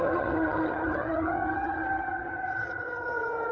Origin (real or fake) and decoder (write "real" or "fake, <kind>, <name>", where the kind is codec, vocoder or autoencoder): fake, vocoder, HiFi-GAN